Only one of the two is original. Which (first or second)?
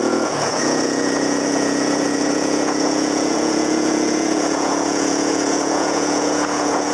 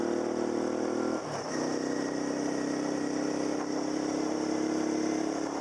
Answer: second